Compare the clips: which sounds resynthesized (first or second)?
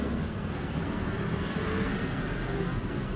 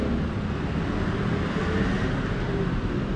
first